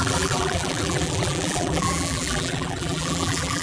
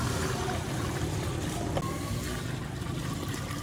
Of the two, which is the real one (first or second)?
second